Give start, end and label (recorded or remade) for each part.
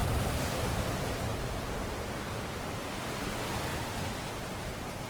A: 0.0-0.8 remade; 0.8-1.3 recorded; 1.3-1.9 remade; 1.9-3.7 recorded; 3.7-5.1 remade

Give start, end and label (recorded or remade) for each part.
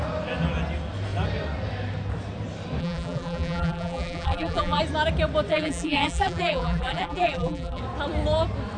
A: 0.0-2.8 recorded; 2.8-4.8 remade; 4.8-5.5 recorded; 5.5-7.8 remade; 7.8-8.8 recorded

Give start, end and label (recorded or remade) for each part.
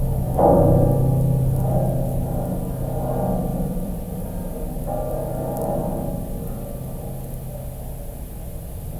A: 0.0-1.0 remade; 1.0-3.5 recorded; 3.5-4.8 remade; 4.8-9.0 recorded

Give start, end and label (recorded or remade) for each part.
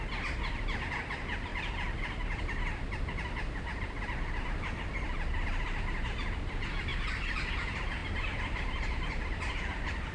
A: 0.0-1.5 remade; 1.5-2.4 recorded; 2.4-10.1 remade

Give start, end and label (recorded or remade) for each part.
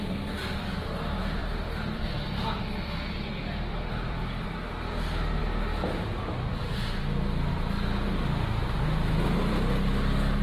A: 0.0-1.4 recorded; 1.4-4.2 remade; 4.2-10.4 recorded